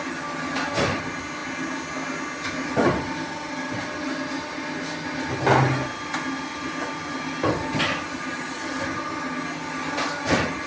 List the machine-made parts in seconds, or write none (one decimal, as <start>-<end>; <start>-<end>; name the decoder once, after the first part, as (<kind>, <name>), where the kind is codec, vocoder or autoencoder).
none